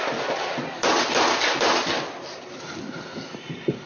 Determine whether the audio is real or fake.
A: real